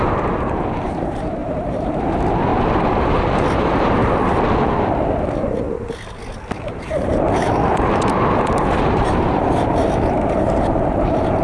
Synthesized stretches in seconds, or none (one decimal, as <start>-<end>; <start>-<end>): 0.0-2.5; 3.6-4.0; 6.7-11.4